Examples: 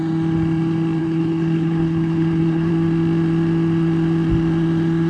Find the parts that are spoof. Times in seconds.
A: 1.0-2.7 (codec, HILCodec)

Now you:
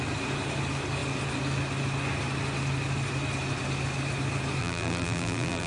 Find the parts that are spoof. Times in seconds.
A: 4.6-5.7 (vocoder, BigVGAN v2)

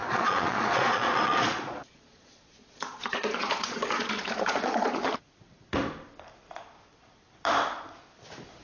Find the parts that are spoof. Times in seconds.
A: 0.0-5.1 (vocoder, Vocos)